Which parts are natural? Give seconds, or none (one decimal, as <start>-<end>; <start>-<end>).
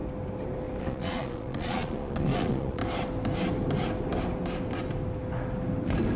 0.0-0.8; 2.8-6.2